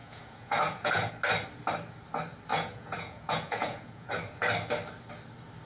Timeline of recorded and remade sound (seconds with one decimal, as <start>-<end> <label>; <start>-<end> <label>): 0.0-1.1 remade; 1.1-2.5 recorded; 2.5-4.1 remade; 4.1-5.7 recorded